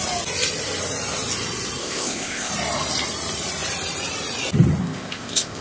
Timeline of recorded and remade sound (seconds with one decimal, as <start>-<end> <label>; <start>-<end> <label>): 0.0-1.8 recorded; 1.8-2.5 remade; 2.5-4.8 recorded; 4.8-5.6 remade